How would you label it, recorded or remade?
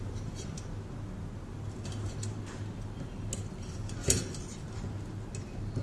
recorded